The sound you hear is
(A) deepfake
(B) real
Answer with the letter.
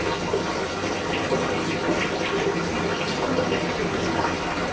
B